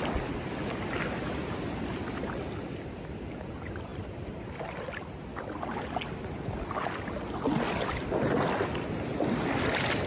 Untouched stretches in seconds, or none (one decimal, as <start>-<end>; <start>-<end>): 0.0-10.1